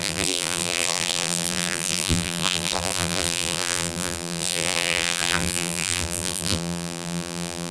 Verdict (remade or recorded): remade